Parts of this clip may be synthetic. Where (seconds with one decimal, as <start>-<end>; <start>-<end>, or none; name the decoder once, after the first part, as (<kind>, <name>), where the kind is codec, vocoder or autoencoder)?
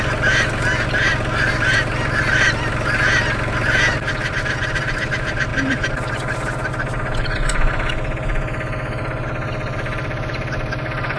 none